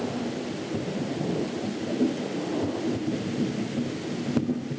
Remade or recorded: recorded